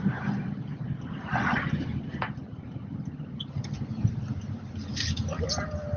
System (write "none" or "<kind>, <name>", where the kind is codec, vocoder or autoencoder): none